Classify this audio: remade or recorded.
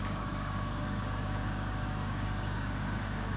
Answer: remade